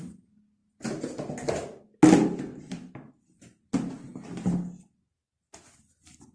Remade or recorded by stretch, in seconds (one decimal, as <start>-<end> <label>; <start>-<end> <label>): 0.0-2.5 recorded; 2.5-3.2 remade; 3.2-6.3 recorded